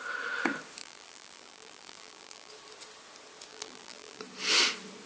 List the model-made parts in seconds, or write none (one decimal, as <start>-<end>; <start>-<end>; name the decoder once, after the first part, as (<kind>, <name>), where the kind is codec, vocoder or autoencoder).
0.8-2.5 (vocoder, BigVGAN v2); 3.5-4.2